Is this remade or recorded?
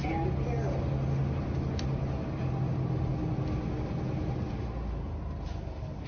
recorded